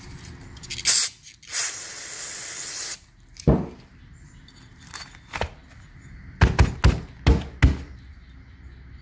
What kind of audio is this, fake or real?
real